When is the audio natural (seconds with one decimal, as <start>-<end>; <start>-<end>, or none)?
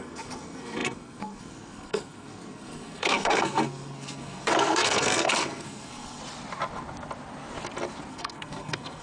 6.2-8.1